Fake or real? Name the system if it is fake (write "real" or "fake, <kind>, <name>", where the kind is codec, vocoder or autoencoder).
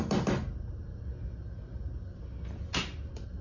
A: real